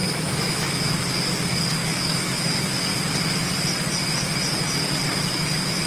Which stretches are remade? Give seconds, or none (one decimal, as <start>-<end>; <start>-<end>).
0.0-0.9; 1.8-2.7